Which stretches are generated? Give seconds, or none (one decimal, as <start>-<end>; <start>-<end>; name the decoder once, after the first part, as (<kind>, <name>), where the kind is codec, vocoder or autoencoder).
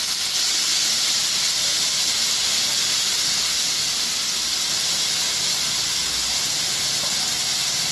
none